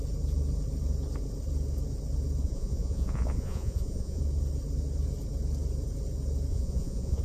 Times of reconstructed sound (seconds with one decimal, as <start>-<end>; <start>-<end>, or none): 2.4-4.2; 6.5-7.2